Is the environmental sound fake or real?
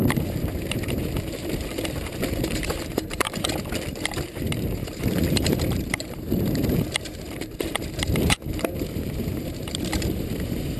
fake